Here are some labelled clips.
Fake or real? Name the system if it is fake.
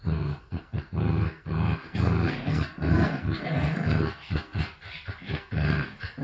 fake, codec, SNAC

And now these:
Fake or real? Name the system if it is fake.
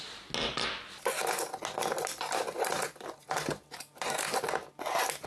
real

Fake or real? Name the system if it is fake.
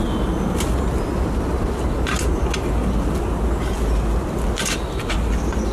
real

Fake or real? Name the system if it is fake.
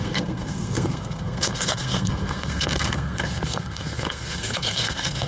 fake, codec, SNAC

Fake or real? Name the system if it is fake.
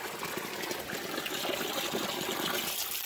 real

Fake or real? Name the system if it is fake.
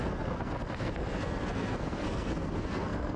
fake, codec, SNAC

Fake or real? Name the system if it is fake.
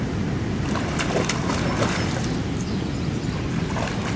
real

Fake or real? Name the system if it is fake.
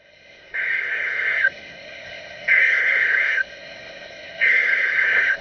fake, codec, SNAC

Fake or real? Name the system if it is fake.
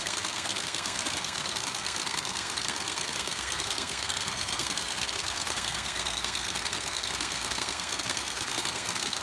fake, codec, SNAC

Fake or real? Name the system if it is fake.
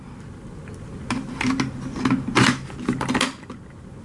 real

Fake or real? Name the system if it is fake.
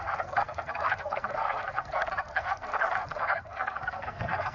fake, codec, SNAC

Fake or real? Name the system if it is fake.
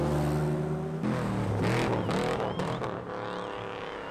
real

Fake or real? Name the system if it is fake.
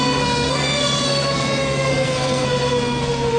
fake, codec, SNAC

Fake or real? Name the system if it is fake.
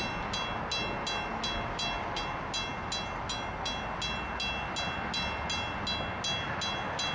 real